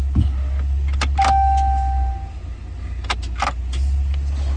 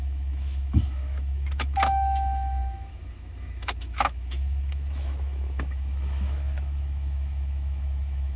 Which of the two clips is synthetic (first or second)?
second